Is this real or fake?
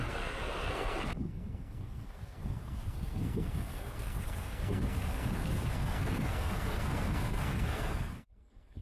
fake